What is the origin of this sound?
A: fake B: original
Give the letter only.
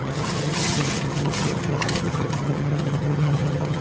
A